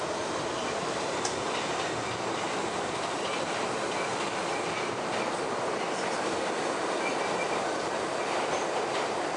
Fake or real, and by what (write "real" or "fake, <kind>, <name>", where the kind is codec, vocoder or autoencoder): real